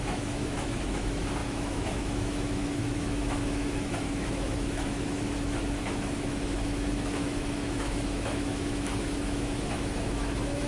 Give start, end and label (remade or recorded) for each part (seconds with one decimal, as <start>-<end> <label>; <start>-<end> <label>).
0.0-10.7 remade